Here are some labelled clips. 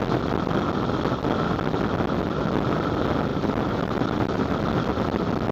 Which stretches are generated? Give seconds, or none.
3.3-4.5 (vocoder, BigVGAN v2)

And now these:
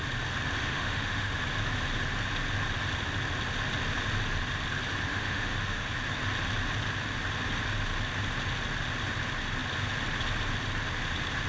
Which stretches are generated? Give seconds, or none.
0.6-1.4 (autoencoder, DAC-VAE); 5.1-5.9

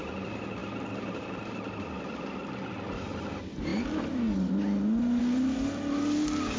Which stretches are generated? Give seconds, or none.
none

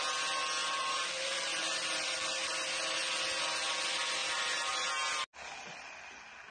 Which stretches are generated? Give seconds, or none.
0.6-2.5 (vocoder, BigVGAN v2); 4.2-4.9